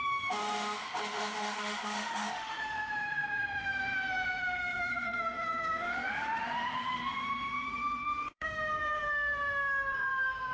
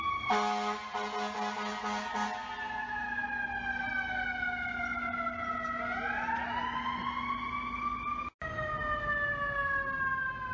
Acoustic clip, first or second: second